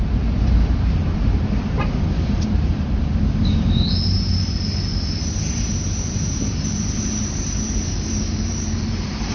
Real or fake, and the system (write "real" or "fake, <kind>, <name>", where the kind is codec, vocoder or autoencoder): fake, vocoder, BigVGAN v2